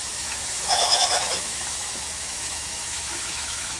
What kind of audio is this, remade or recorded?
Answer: remade